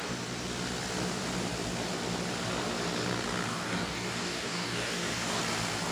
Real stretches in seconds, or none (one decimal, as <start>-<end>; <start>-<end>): 0.0-3.5; 5.4-5.9